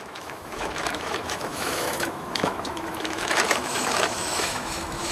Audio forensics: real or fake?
fake